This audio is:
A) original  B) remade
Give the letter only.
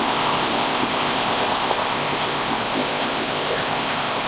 B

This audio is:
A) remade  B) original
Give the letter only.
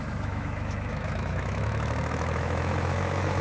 A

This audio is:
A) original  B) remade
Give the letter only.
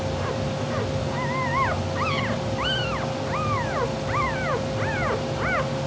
A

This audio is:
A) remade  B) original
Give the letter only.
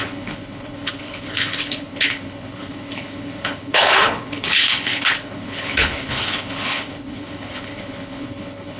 A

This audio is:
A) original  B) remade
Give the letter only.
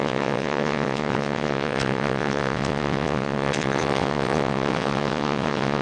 B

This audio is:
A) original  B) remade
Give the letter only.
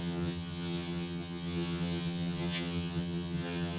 B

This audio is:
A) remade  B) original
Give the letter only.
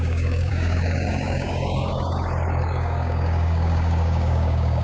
A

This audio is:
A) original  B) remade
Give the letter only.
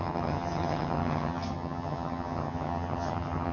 B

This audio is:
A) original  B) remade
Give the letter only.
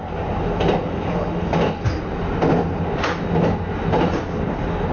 A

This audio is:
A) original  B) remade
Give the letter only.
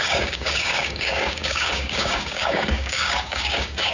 B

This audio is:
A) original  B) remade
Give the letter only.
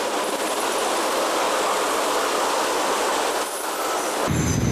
A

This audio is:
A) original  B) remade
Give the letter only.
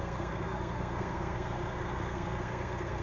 B